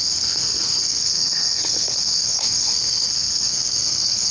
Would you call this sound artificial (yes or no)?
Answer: yes